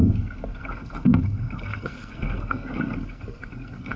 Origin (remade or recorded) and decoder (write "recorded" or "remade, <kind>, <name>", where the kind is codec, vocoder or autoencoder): remade, codec, SNAC